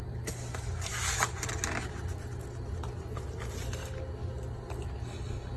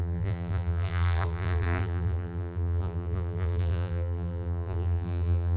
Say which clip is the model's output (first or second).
second